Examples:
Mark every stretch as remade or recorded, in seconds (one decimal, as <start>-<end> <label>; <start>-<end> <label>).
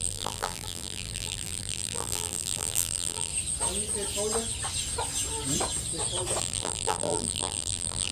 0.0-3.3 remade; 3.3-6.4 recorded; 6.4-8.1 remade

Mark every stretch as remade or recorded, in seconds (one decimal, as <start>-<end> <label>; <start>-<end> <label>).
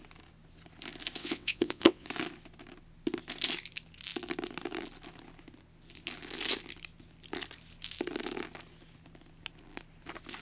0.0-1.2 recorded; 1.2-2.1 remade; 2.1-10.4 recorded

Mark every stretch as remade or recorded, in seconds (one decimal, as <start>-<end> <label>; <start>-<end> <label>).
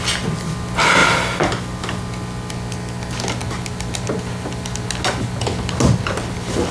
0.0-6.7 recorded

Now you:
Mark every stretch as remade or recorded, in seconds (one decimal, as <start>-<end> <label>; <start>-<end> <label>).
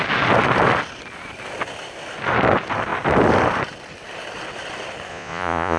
0.0-5.1 recorded; 5.1-5.8 remade